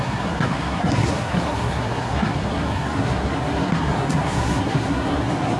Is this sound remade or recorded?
remade